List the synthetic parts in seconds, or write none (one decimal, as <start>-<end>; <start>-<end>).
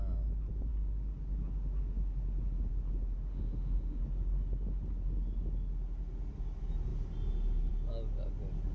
3.3-4.0